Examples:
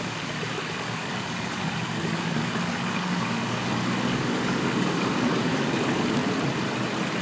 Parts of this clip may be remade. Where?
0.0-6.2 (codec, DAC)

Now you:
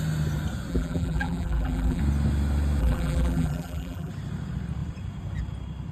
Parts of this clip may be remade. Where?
0.7-2.0 (vocoder, BigVGAN v2); 2.8-4.1

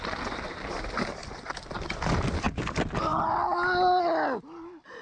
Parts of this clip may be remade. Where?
none

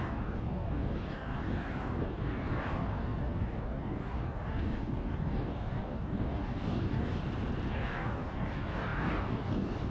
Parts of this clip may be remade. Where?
0.0-7.2 (codec, DAC); 7.7-9.9